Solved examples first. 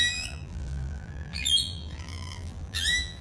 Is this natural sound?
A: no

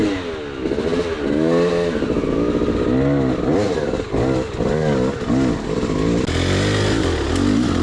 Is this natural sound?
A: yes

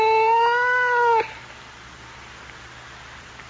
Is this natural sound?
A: yes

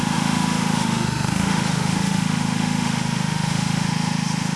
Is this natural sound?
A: no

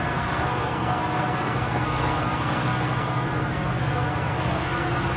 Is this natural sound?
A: no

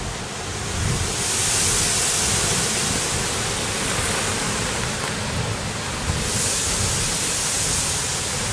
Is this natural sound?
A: yes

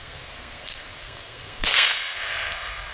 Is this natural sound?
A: no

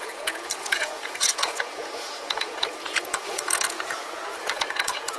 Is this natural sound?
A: no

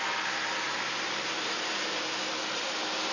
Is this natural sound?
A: yes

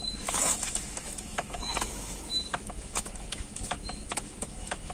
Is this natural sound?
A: no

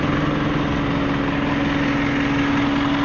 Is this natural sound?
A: yes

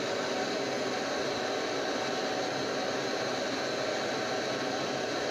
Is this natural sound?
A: yes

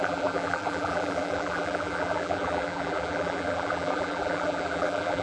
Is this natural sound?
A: no